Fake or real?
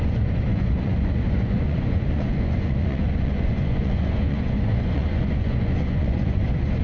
fake